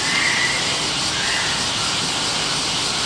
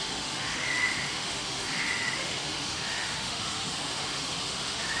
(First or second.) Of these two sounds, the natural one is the first